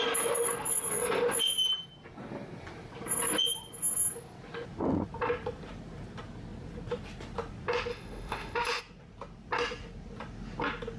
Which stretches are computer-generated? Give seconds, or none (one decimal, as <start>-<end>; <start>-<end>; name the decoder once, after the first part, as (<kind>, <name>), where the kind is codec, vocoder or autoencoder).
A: 7.9-8.8 (autoencoder, DAC-VAE)